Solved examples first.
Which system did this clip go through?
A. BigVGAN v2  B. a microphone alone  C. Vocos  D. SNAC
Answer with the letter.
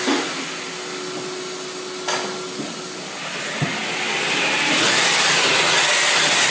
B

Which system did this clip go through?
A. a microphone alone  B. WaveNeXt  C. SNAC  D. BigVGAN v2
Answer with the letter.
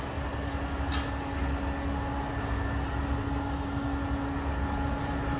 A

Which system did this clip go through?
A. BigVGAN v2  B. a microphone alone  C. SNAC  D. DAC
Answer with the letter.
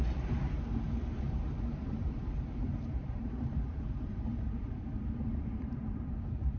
A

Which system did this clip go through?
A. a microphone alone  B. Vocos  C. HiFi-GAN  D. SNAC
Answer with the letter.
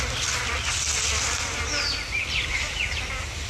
A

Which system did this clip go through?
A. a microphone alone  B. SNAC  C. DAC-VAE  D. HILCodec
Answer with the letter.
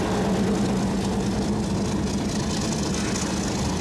A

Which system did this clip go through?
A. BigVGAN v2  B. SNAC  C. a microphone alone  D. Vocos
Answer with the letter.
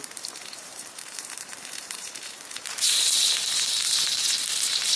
A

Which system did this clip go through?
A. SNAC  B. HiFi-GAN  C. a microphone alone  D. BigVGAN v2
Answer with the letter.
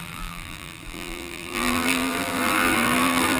D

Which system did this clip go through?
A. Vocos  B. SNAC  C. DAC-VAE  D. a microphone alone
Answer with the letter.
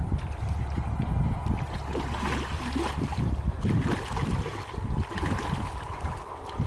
D